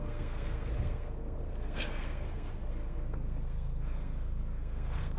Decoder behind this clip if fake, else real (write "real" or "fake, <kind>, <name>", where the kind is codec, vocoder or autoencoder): fake, codec, SNAC